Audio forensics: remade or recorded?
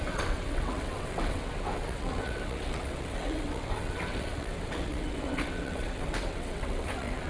remade